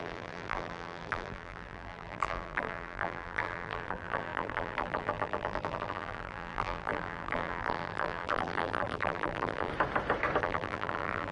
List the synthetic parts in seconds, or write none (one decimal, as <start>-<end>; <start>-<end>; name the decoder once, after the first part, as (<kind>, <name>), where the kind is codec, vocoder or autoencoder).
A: 0.0-9.7 (vocoder, BigVGAN v2); 10.4-11.3